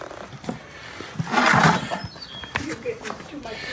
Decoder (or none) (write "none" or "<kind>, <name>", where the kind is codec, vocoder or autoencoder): none